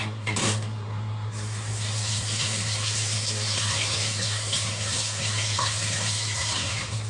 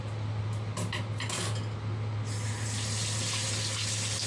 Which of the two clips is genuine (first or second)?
second